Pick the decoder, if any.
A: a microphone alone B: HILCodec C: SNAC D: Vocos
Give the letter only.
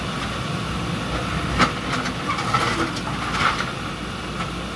A